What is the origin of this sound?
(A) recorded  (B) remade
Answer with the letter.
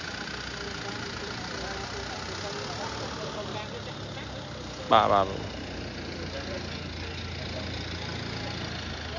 A